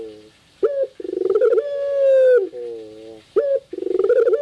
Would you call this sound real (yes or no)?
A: yes